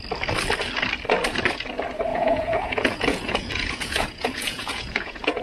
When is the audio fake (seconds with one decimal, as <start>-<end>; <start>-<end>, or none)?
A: 2.1-5.4